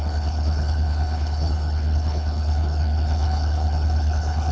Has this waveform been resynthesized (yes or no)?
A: yes